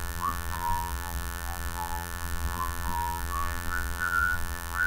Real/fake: fake